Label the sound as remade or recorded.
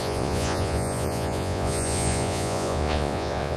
remade